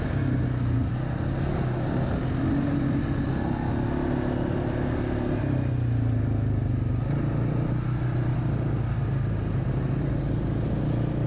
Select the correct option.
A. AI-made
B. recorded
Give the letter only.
B